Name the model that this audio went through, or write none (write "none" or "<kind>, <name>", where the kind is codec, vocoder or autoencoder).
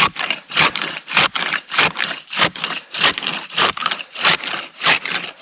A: none